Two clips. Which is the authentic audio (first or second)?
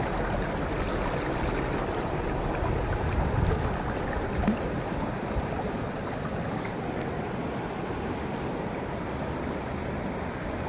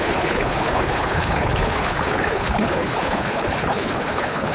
first